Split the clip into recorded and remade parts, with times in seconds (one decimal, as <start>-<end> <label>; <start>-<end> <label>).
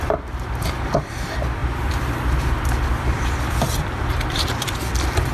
0.0-5.3 remade